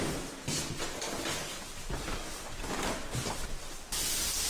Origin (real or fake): real